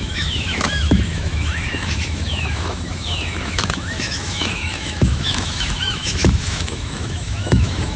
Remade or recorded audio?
remade